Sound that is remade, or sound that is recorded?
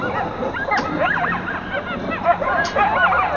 recorded